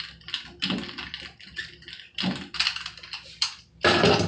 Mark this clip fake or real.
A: real